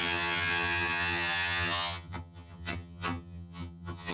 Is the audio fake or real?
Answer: fake